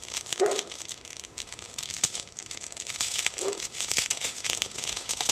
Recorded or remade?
remade